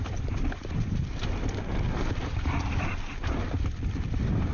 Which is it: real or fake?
real